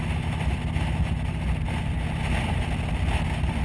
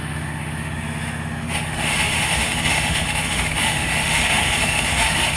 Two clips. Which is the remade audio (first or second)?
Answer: second